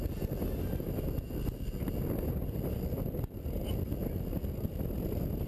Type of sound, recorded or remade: recorded